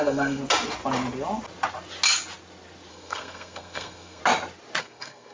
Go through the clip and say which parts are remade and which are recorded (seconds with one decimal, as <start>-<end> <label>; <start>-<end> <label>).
0.0-0.4 remade; 0.4-2.9 recorded; 2.9-4.2 remade; 4.2-4.8 recorded; 4.8-5.3 remade